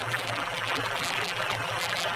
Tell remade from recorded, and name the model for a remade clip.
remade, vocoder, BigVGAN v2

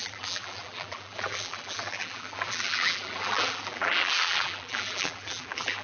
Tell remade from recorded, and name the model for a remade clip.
remade, vocoder, BigVGAN v2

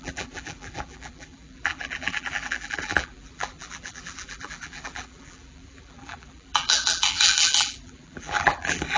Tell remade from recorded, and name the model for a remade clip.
remade, vocoder, BigVGAN v2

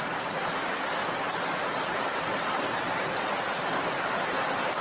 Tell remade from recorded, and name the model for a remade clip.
recorded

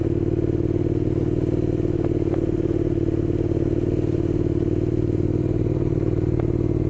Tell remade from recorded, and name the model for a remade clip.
recorded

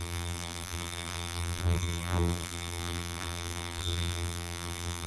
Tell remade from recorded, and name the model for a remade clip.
remade, vocoder, BigVGAN v2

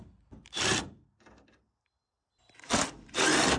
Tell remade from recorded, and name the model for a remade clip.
recorded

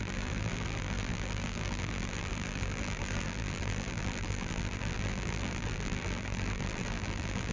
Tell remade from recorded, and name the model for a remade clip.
remade, vocoder, BigVGAN v2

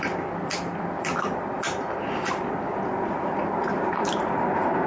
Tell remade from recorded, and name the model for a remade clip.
remade, vocoder, BigVGAN v2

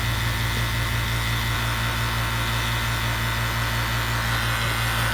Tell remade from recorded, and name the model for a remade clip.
recorded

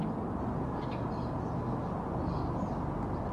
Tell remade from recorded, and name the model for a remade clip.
recorded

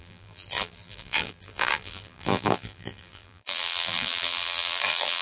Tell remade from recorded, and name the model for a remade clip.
remade, vocoder, BigVGAN v2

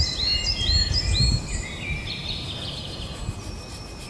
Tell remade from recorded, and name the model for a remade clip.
remade, vocoder, BigVGAN v2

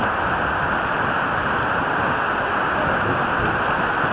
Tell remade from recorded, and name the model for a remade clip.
recorded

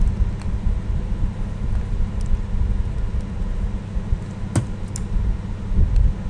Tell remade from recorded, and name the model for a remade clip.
recorded